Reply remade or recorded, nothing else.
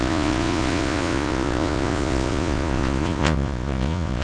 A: remade